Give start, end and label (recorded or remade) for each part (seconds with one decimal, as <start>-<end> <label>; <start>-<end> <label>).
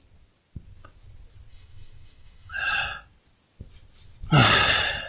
0.0-1.5 recorded; 1.5-2.8 remade; 2.8-5.1 recorded